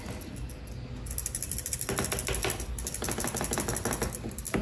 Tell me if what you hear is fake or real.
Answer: real